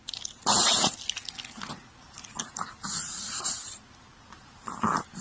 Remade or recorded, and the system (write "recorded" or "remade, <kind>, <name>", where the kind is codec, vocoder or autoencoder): recorded